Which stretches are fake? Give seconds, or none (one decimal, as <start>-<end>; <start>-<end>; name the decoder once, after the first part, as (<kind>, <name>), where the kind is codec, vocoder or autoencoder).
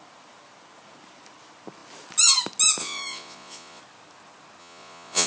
2.8-3.8 (vocoder, Vocos); 4.6-5.3